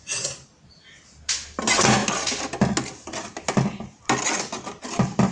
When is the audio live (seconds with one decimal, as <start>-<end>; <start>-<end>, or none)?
0.0-5.3